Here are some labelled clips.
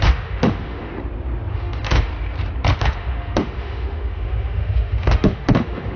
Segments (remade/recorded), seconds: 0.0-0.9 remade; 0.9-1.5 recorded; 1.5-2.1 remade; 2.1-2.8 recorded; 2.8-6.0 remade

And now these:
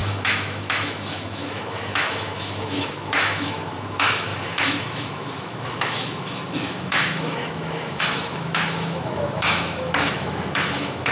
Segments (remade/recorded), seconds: 0.0-11.1 remade

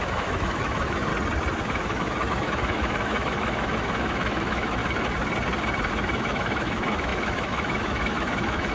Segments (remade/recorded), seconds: 0.0-1.1 remade; 1.1-1.6 recorded; 1.6-4.8 remade; 4.8-5.9 recorded; 5.9-8.7 remade